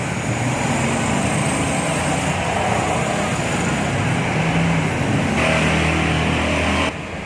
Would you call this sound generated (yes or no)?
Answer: no